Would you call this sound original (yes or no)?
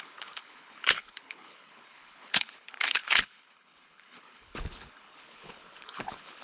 no